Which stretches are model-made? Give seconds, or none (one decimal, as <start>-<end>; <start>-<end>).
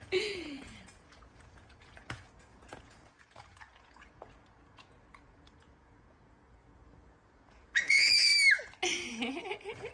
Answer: 0.0-8.3; 9.5-9.9